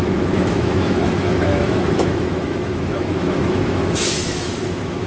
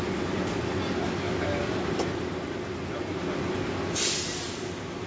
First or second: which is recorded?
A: second